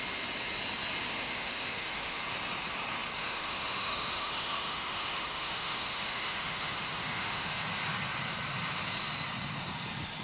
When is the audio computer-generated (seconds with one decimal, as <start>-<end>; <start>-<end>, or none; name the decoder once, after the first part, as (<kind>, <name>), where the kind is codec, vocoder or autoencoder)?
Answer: 1.1-2.2 (autoencoder, DAC-VAE); 3.2-7.5